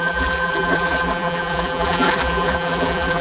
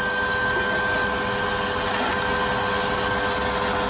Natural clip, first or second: second